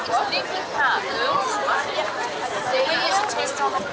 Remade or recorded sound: recorded